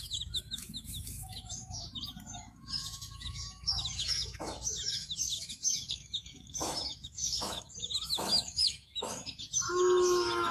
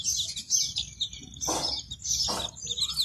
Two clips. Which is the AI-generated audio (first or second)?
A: first